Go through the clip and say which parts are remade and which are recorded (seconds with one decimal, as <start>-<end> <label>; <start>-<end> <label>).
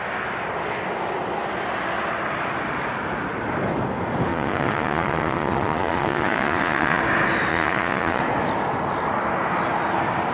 0.0-4.3 recorded; 4.3-7.0 remade; 7.0-7.5 recorded; 7.5-8.2 remade; 8.2-10.3 recorded